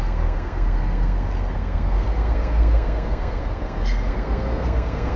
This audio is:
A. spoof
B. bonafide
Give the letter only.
A